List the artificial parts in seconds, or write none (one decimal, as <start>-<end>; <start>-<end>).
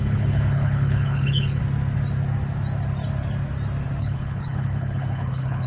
0.0-1.6; 4.0-5.7